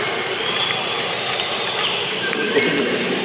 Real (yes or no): yes